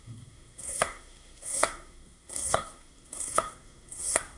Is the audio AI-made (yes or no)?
yes